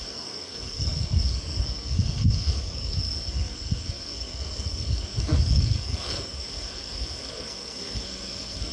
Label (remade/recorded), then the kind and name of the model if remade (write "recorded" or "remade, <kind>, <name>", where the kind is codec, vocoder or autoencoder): remade, codec, SNAC